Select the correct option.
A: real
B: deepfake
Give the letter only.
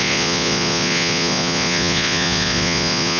B